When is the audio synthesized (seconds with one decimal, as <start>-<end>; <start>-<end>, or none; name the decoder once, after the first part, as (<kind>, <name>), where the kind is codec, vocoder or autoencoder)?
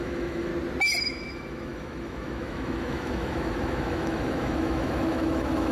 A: 0.0-0.5 (autoencoder, DAC-VAE); 1.0-5.7